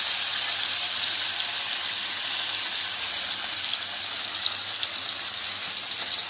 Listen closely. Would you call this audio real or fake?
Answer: real